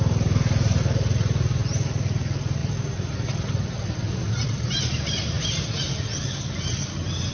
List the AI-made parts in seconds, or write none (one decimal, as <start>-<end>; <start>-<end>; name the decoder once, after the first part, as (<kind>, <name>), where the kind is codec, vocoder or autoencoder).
2.6-5.6 (vocoder, BigVGAN v2)